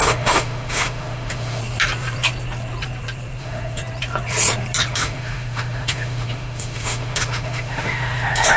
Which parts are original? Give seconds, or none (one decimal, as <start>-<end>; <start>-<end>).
1.6-3.4; 3.8-4.9